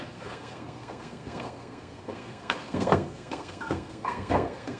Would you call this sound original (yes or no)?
no